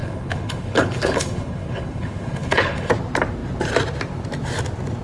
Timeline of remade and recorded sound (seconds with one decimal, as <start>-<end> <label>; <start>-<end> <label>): 0.0-2.9 remade; 2.9-5.0 recorded